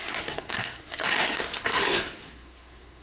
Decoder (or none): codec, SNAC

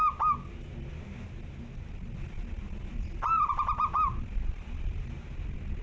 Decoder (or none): none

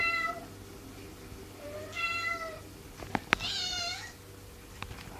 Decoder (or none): none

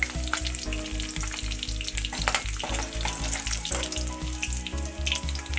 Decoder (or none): none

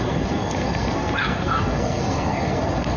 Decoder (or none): codec, SNAC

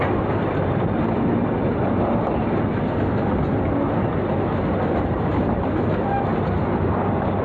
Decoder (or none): none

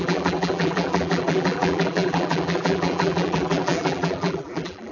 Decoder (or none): vocoder, BigVGAN v2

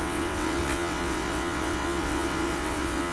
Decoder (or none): vocoder, WaveNeXt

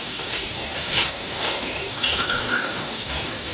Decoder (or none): codec, DAC